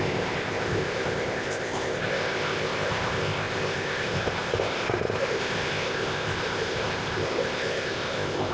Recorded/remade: remade